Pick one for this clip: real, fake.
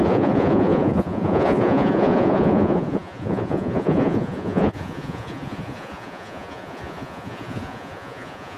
fake